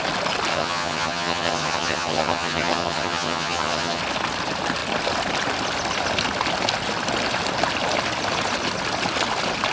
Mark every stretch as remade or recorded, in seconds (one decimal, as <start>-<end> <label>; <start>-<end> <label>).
0.0-0.5 recorded; 0.5-4.0 remade; 4.0-9.7 recorded